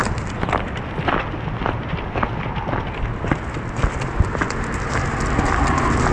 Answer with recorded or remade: recorded